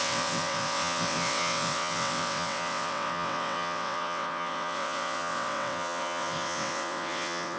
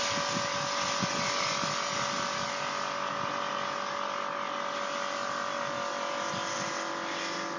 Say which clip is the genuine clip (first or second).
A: second